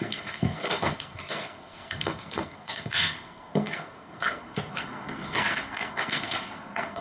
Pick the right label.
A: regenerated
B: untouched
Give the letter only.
A